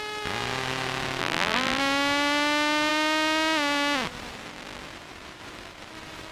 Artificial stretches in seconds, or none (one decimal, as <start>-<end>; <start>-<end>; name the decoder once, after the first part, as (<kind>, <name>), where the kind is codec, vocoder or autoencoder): 1.2-1.8 (vocoder, BigVGAN v2)